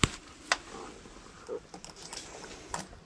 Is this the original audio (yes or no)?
yes